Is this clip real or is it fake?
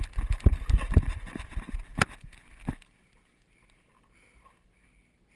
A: real